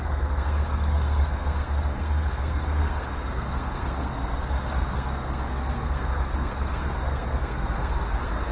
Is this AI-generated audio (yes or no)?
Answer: yes